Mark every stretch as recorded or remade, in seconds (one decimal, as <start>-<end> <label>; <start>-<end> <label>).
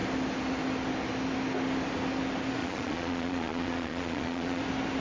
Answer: 0.0-2.6 recorded; 2.6-4.6 remade; 4.6-5.0 recorded